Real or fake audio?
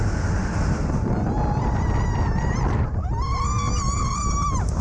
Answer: real